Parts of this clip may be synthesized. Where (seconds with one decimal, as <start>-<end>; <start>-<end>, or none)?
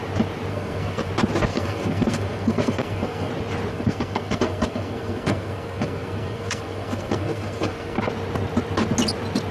0.5-1.1; 1.5-3.3; 3.7-8.0